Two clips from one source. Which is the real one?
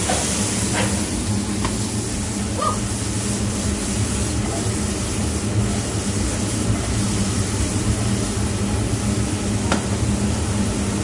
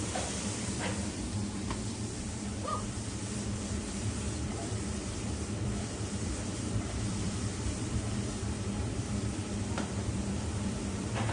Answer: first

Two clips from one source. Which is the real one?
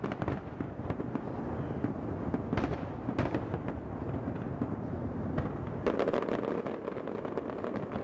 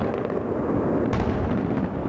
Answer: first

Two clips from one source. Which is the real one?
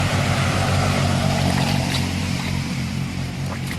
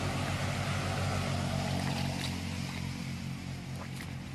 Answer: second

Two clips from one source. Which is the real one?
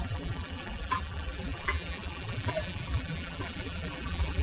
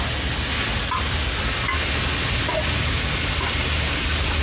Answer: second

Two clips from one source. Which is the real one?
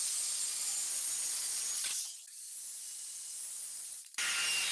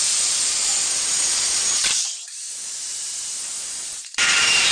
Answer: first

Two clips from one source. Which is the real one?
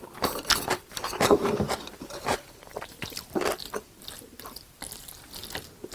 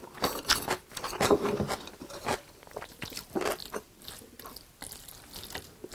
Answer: second